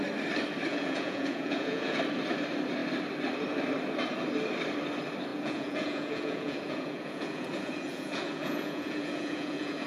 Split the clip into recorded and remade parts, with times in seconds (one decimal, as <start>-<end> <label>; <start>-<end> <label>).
0.0-0.7 recorded; 0.7-2.0 remade; 2.0-5.3 recorded; 5.3-9.9 remade